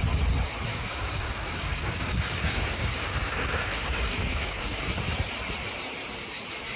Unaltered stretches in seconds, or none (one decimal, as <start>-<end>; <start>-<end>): 0.0-0.7; 4.8-6.8